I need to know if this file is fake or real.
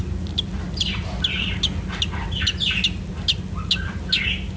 real